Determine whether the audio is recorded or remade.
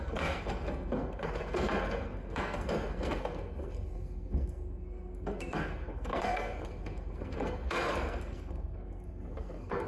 remade